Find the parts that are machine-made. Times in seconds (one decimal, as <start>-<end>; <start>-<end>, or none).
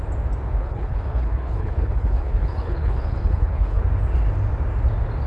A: 0.6-3.8